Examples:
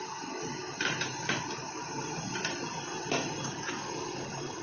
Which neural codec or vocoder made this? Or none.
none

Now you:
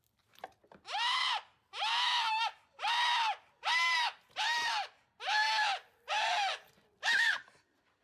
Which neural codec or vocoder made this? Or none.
none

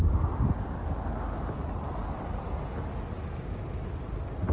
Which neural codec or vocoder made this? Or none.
none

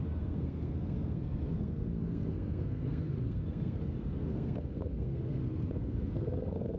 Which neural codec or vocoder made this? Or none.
codec, SNAC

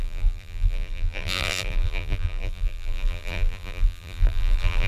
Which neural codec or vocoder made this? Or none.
vocoder, BigVGAN v2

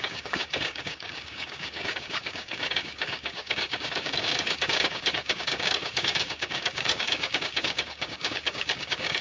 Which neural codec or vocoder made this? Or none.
codec, DAC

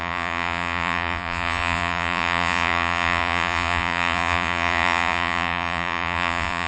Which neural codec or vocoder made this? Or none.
vocoder, Vocos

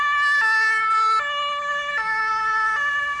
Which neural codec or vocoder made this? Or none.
none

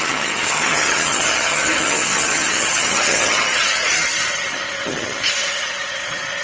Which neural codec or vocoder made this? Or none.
vocoder, HiFi-GAN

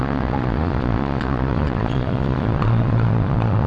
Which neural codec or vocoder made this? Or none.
vocoder, Vocos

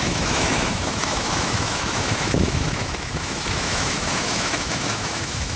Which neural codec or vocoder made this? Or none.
autoencoder, DAC-VAE